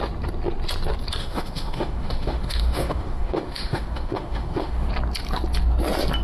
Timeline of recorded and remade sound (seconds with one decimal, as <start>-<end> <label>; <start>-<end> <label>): 0.0-1.2 recorded; 1.2-4.9 remade; 4.9-6.2 recorded